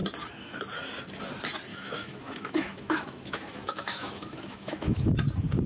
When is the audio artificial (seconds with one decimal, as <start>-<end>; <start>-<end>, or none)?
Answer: 1.7-5.1